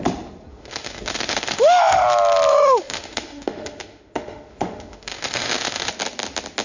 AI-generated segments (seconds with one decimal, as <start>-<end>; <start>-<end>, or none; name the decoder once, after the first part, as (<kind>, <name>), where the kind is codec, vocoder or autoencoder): 0.5-2.0 (autoencoder, DAC-VAE); 2.5-5.9